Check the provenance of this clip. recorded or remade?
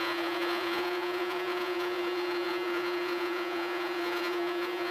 remade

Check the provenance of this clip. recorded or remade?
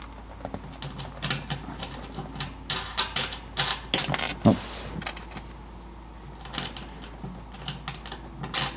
recorded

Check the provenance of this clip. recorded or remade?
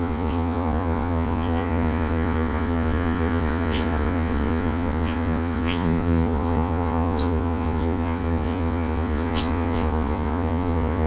remade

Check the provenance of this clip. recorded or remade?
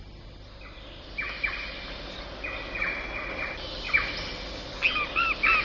recorded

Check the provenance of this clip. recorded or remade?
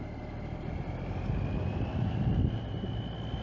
recorded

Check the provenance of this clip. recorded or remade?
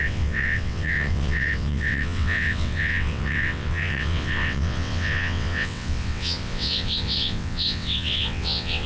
remade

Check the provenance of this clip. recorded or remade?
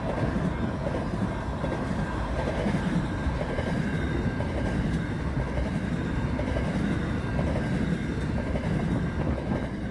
recorded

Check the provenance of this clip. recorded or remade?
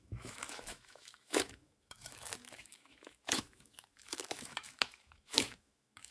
remade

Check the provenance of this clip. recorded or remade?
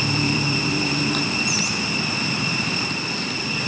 remade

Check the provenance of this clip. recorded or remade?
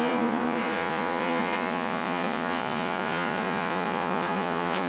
remade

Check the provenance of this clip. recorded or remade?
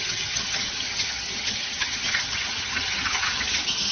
remade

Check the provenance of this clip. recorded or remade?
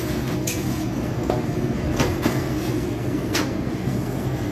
remade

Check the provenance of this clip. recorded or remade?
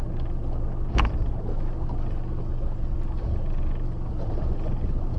recorded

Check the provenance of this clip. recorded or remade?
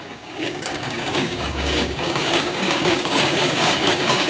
remade